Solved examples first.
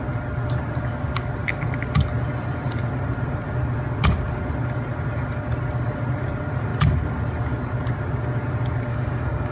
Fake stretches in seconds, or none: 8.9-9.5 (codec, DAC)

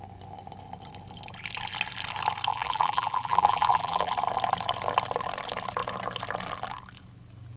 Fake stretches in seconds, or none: 2.5-4.1 (vocoder, BigVGAN v2)

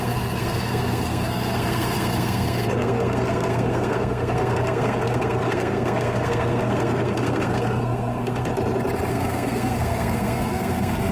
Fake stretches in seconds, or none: 0.0-8.5 (codec, SNAC); 9.1-11.1

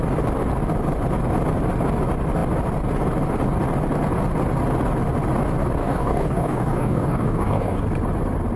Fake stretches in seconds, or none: 5.8-7.8 (codec, DAC)